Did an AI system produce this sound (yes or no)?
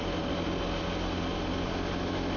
no